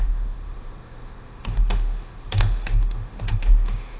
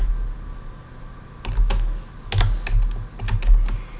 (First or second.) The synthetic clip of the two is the first